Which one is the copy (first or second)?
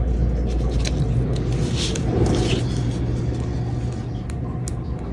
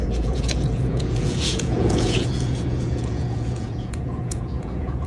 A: second